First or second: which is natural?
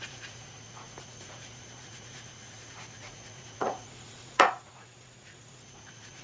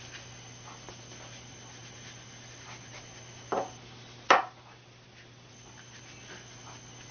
second